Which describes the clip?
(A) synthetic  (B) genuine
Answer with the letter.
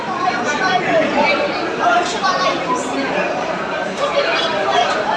A